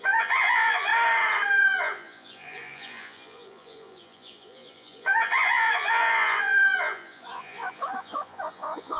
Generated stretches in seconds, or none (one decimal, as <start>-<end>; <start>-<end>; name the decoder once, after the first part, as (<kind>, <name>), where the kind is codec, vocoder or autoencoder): 0.0-0.9 (vocoder, Vocos); 1.6-9.0